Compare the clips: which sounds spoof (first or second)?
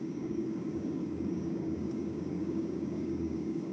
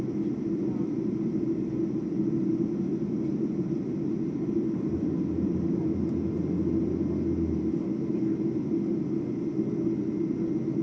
first